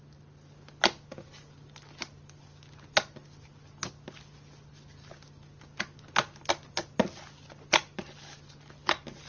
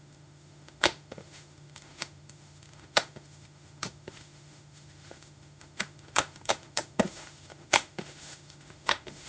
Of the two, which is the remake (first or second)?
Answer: second